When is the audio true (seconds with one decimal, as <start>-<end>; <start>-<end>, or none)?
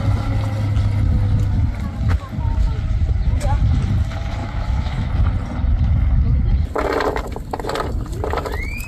0.0-4.4; 5.1-8.9